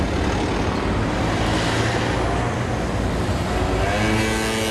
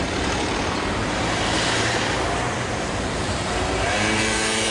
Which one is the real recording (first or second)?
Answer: first